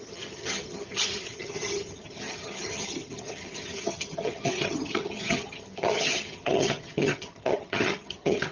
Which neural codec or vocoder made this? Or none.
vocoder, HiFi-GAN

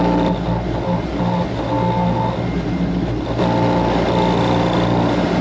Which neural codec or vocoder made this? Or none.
none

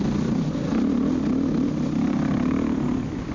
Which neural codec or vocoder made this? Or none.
none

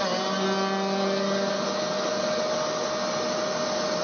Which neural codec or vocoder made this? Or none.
none